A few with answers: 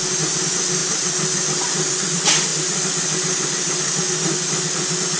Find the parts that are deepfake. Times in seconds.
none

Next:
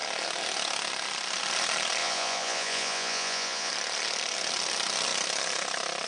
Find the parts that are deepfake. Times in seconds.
2.0-3.7 (vocoder, Vocos)

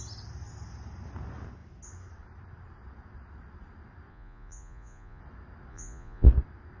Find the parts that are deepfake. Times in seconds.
4.1-5.2 (vocoder, Vocos); 5.7-6.3

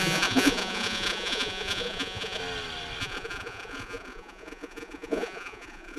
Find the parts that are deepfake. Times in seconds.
0.0-2.4 (vocoder, Vocos); 3.0-6.0

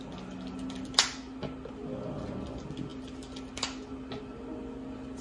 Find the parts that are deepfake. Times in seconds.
none